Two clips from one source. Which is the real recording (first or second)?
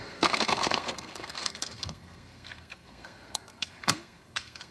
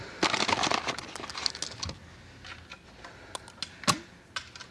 second